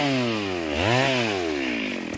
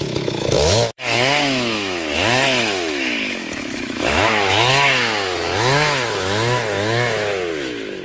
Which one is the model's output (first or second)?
second